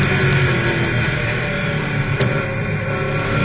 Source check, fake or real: real